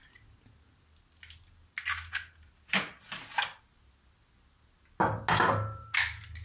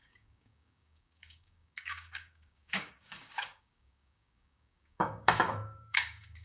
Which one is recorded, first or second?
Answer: first